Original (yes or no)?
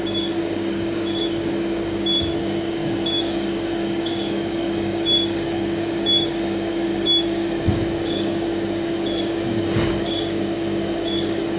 no